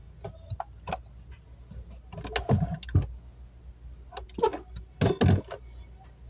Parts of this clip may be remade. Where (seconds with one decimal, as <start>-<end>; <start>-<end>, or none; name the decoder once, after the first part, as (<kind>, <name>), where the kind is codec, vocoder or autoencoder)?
none